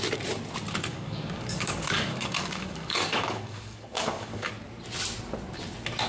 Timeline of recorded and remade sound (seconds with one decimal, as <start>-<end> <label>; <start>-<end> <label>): 0.0-0.9 recorded; 0.9-4.5 remade; 4.5-6.1 recorded